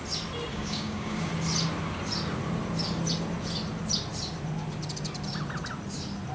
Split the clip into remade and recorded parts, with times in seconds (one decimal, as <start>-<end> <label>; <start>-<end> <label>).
0.0-0.5 recorded; 0.5-1.3 remade; 1.3-6.3 recorded